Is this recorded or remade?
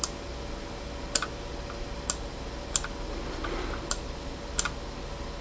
recorded